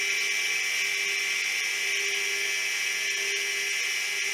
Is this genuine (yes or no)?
yes